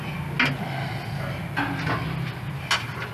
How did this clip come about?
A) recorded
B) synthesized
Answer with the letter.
A